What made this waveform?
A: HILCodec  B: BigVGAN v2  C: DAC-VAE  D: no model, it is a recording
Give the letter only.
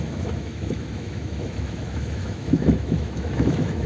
C